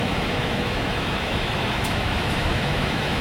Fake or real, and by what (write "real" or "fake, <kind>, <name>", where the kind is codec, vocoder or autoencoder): fake, autoencoder, DAC-VAE